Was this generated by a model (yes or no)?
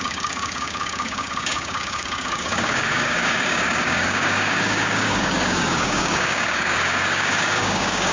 yes